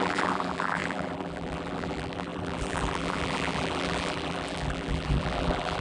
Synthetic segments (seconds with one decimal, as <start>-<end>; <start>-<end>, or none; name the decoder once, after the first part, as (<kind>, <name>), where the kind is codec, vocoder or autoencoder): 0.0-5.8 (vocoder, BigVGAN v2)